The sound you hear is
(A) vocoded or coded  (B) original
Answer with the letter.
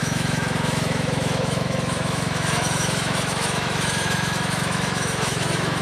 A